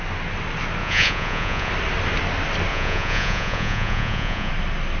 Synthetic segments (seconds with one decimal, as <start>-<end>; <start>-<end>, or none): 0.8-1.7; 2.7-4.5